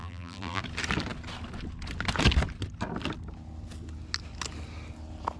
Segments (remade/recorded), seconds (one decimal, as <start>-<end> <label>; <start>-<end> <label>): 0.0-0.6 remade; 0.6-5.4 recorded